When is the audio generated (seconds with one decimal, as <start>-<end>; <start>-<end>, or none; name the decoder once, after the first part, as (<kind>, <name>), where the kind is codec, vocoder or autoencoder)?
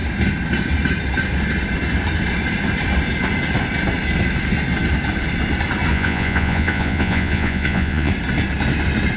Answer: 5.9-8.1 (vocoder, Vocos)